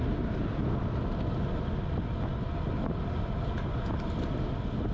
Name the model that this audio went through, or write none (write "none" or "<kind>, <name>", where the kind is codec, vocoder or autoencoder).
none